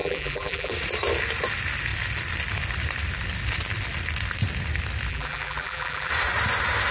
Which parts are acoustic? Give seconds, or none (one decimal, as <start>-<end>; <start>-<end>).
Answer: 0.7-5.1; 6.1-6.9